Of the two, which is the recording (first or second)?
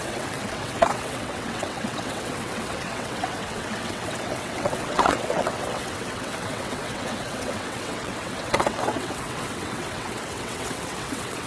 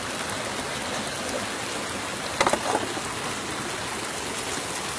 second